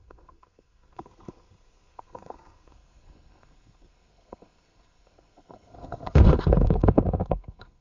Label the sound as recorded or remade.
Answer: remade